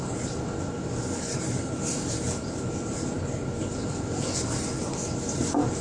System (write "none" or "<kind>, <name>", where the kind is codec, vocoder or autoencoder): none